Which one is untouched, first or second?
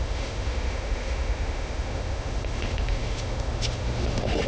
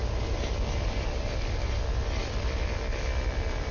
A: second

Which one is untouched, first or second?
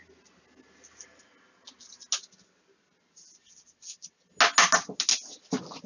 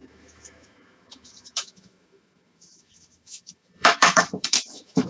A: first